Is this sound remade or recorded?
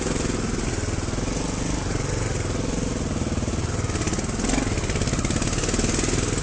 recorded